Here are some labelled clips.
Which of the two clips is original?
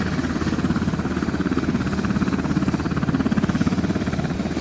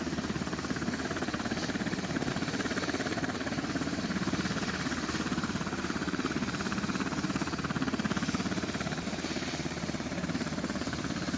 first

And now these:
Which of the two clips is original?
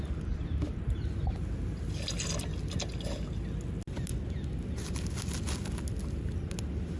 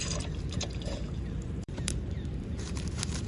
first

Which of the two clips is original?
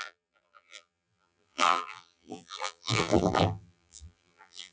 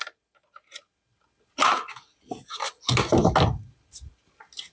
second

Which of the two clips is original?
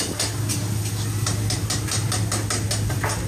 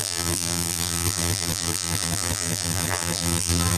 first